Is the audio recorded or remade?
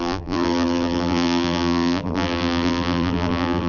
remade